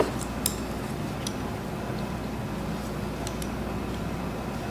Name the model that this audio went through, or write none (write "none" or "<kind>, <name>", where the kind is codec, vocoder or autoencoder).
none